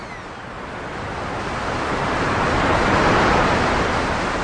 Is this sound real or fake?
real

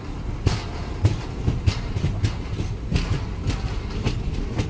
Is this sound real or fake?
real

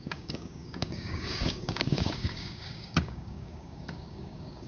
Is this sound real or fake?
fake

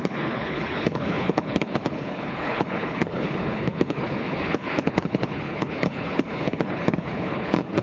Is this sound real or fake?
fake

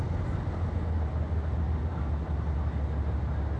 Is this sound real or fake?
real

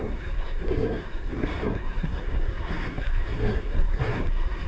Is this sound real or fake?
fake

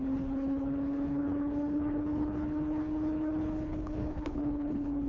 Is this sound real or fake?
fake